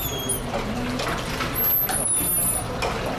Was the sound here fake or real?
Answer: real